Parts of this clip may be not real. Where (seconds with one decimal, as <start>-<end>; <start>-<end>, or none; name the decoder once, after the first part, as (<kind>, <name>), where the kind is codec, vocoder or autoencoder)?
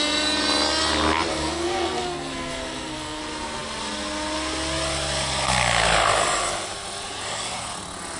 1.3-3.2 (codec, SNAC)